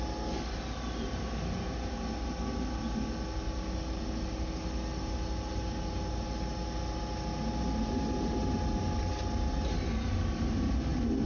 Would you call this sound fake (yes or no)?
no